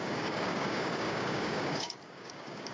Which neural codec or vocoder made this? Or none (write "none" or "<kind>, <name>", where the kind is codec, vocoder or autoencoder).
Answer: codec, DAC